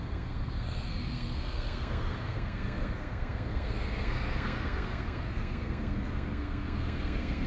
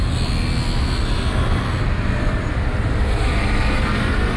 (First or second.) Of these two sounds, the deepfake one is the first